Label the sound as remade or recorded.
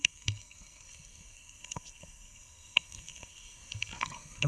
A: remade